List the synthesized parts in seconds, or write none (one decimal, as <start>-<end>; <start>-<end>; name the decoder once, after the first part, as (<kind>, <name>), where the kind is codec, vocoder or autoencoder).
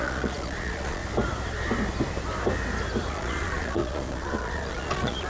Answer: 0.0-1.0 (vocoder, Vocos); 3.1-5.3